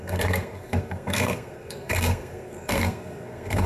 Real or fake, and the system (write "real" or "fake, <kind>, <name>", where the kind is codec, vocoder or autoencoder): fake, codec, SNAC